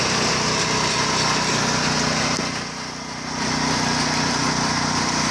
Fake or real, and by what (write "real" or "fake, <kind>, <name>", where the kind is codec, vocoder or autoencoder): real